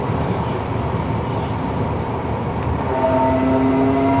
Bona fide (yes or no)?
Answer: yes